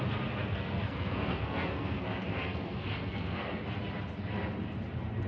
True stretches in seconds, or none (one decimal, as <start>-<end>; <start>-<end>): 0.0-0.4; 3.6-5.3